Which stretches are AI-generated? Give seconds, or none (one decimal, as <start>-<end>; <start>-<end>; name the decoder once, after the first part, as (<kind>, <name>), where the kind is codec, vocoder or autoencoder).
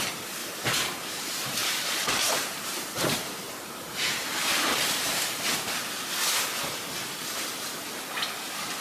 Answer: 0.4-5.5 (vocoder, BigVGAN v2)